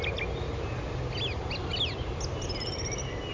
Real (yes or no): yes